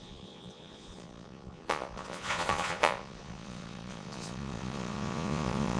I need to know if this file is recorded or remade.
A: remade